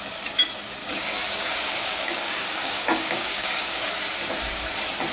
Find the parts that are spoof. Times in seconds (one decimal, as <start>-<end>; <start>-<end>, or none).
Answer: 0.8-3.9